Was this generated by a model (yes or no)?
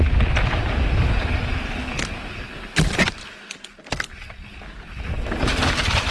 no